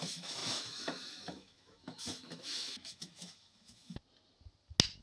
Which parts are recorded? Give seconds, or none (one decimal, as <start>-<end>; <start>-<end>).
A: 4.0-5.0